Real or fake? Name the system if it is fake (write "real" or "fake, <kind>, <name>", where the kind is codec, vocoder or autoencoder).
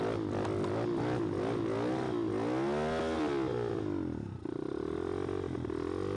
real